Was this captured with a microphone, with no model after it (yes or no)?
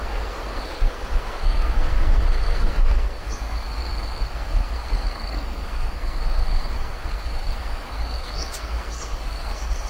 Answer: no